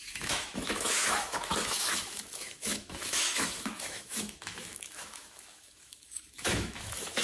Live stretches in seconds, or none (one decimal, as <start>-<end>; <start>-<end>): none